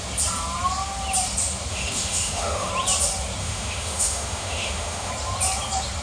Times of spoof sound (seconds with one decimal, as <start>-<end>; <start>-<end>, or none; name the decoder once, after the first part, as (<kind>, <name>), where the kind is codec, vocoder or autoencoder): 1.7-2.7 (autoencoder, DAC-VAE); 3.4-5.1